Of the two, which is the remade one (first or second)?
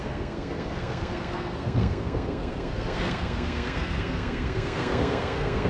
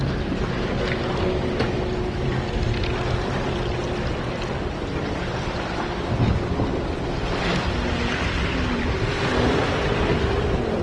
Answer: first